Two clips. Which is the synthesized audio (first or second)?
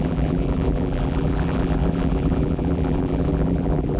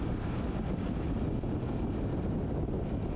first